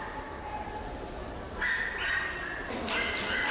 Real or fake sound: real